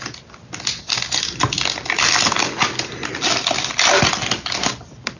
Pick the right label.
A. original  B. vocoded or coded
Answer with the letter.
A